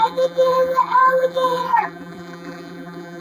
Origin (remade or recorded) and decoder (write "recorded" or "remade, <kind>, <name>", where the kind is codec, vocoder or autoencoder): remade, vocoder, BigVGAN v2